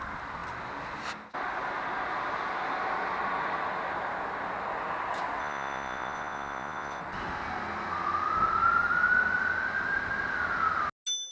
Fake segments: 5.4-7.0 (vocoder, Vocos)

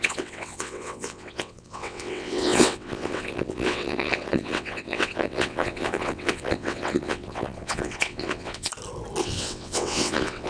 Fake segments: 0.0-8.7 (vocoder, WaveNeXt); 9.2-10.5